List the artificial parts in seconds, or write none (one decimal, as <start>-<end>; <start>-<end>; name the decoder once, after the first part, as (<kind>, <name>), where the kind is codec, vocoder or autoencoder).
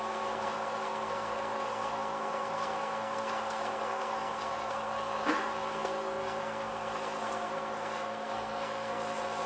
0.0-9.5 (codec, SNAC)